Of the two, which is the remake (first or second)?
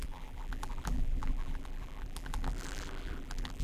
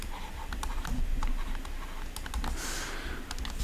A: first